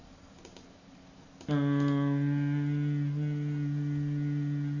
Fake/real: real